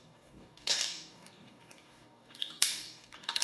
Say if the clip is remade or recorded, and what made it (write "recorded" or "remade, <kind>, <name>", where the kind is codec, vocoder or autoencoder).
remade, codec, DAC